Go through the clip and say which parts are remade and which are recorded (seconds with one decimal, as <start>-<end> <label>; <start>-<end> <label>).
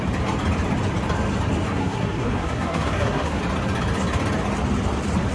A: 0.0-1.7 recorded; 1.7-3.4 remade; 3.4-5.3 recorded